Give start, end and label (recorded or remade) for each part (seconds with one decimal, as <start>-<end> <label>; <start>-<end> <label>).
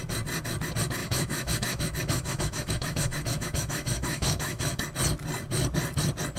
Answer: 0.0-1.0 recorded; 1.0-4.8 remade; 4.8-6.4 recorded